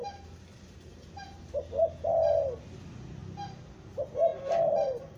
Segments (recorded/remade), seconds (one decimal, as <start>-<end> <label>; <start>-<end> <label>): 0.0-2.1 recorded; 2.1-2.6 remade; 2.6-4.3 recorded; 4.3-5.2 remade